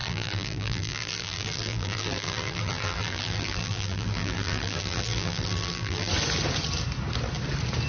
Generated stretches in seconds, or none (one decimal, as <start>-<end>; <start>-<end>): 0.0-6.1